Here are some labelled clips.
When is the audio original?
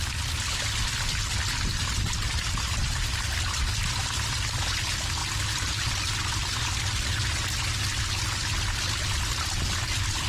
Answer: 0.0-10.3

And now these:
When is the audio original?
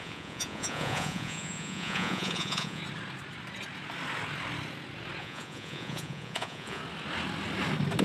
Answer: 2.8-5.2; 6.8-8.0